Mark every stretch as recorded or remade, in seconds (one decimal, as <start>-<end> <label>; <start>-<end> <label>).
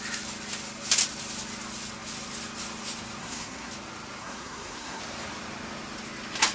0.0-3.2 recorded; 3.2-3.7 remade; 3.7-4.2 recorded; 4.2-5.0 remade; 5.0-6.5 recorded